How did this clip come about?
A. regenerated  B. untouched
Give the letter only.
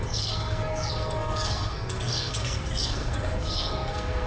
A